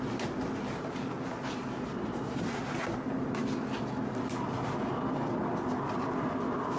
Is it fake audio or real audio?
real